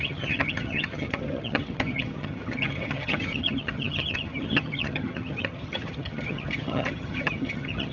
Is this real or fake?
fake